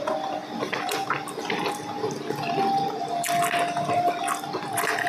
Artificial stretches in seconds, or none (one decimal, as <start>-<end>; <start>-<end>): none